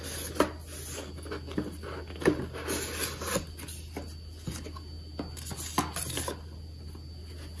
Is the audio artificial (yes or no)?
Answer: no